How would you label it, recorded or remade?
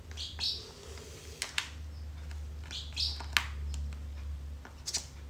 recorded